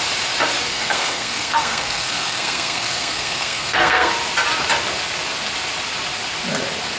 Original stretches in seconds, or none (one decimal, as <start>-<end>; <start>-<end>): 0.0-0.7; 4.1-7.0